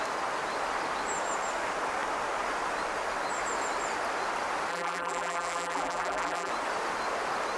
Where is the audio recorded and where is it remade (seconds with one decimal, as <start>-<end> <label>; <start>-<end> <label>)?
0.0-4.7 recorded; 4.7-6.5 remade; 6.5-7.6 recorded